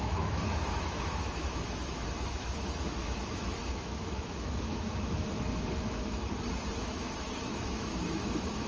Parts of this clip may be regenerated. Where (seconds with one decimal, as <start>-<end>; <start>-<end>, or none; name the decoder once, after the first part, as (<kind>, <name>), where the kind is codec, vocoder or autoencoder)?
0.0-6.2 (autoencoder, DAC-VAE); 6.8-8.7